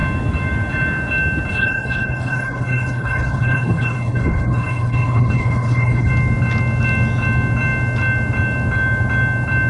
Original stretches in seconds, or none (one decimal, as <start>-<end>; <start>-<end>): 0.0-1.5; 6.1-9.7